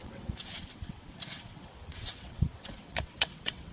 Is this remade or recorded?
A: remade